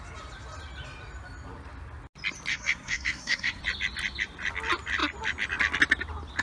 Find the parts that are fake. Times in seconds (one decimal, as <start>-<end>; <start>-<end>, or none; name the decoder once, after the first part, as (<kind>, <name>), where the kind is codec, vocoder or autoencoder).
2.5-3.6 (codec, SNAC)